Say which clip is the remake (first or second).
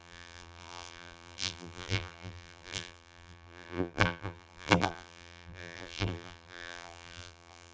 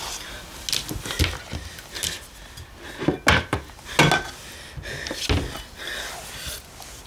first